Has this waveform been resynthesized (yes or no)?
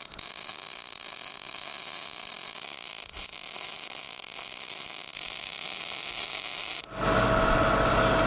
no